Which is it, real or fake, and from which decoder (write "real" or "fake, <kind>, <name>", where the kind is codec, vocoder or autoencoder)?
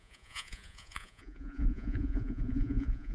fake, vocoder, Vocos